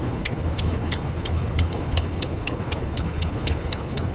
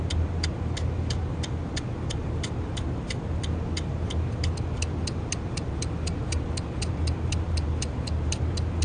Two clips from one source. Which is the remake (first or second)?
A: first